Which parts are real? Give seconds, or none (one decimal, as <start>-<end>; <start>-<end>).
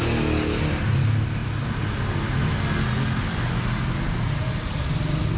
0.0-5.4